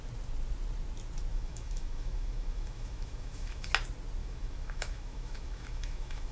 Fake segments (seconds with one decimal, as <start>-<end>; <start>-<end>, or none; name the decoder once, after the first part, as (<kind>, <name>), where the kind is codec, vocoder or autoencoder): 1.3-3.7 (autoencoder, DAC-VAE); 4.2-6.3